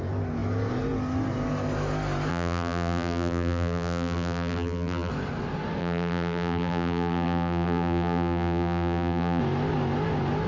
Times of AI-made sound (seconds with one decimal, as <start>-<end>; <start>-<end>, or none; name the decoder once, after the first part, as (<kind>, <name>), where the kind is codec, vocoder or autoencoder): 2.3-5.1 (vocoder, BigVGAN v2); 5.8-9.4